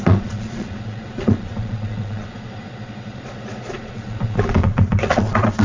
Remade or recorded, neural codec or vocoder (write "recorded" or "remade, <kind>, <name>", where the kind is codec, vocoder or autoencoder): remade, vocoder, Vocos